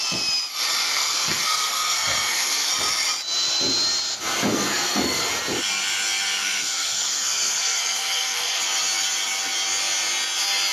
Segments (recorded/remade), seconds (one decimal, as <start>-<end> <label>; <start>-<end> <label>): 0.0-0.9 recorded; 0.9-2.7 remade; 2.7-4.5 recorded; 4.5-5.3 remade; 5.3-6.4 recorded; 6.4-8.6 remade; 8.6-10.7 recorded